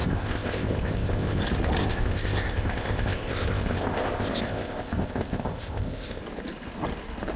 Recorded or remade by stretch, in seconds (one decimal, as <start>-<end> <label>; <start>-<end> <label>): 0.0-1.4 remade; 1.4-1.8 recorded; 1.8-6.2 remade; 6.2-7.4 recorded